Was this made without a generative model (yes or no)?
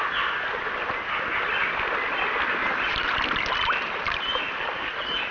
yes